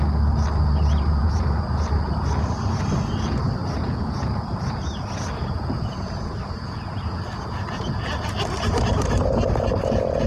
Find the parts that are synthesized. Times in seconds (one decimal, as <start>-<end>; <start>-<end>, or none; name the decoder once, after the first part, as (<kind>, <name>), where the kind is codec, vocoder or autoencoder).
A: 1.2-1.9 (vocoder, Vocos); 3.6-7.9